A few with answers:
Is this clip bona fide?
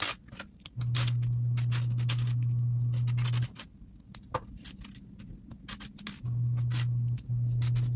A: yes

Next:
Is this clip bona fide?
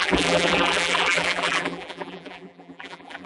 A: no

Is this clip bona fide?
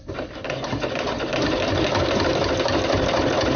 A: yes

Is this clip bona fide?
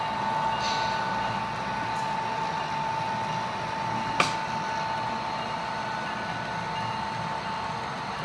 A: yes